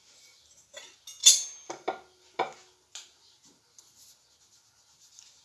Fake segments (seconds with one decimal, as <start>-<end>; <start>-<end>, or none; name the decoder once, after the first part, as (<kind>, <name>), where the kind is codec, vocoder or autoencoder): none